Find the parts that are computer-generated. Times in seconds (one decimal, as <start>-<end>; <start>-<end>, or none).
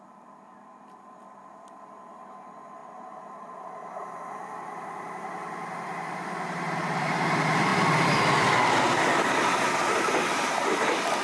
0.0-11.2